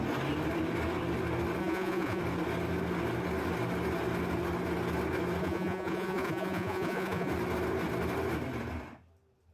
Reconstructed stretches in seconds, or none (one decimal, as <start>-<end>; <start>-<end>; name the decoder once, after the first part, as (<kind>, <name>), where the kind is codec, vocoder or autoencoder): 1.6-2.2 (vocoder, Vocos); 5.4-7.3